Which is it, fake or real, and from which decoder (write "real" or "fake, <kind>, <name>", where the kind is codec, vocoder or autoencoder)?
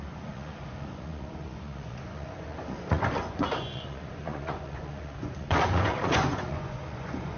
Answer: fake, vocoder, Vocos